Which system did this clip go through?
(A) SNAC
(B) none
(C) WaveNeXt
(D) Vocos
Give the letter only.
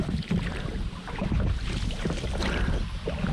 B